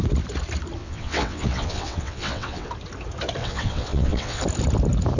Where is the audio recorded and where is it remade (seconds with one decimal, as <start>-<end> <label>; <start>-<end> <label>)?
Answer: 0.0-0.8 recorded; 0.8-2.7 remade; 2.7-3.4 recorded; 3.4-4.4 remade; 4.4-5.2 recorded